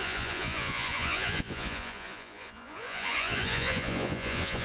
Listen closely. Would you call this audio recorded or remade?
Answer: remade